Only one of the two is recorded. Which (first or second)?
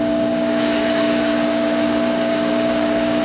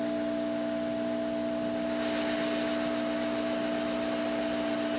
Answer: second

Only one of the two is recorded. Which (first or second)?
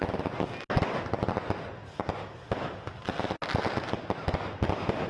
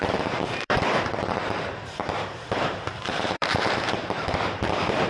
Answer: first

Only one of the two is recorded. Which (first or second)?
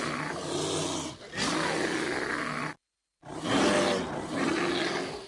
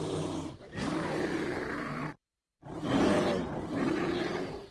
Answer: first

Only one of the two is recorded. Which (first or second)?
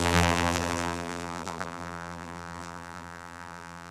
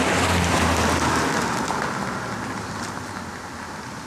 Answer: second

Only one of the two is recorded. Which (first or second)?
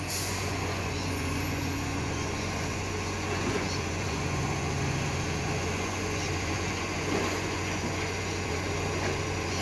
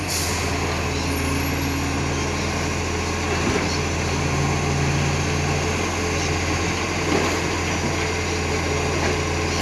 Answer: second